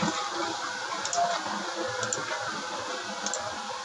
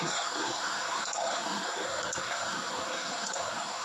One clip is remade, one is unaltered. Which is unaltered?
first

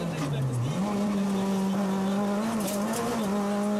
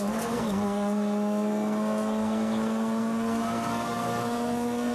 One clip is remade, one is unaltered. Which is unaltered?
first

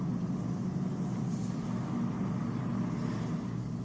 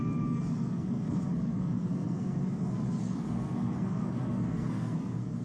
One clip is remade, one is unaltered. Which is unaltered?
first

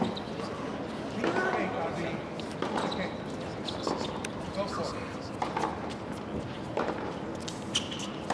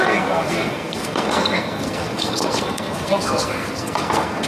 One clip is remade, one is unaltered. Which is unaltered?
first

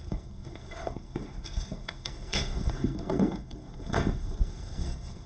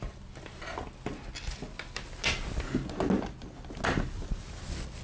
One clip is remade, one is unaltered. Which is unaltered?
second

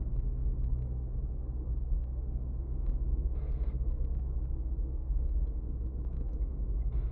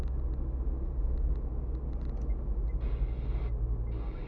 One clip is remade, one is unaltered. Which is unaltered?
second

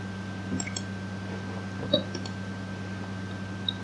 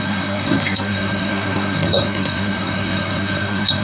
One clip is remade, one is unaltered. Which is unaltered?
first